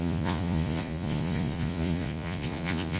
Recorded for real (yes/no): no